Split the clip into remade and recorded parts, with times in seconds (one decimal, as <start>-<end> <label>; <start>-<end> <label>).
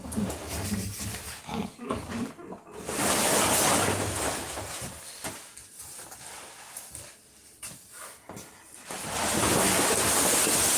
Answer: 0.0-1.1 recorded; 1.1-2.3 remade; 2.3-10.8 recorded